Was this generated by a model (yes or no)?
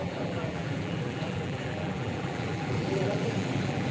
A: yes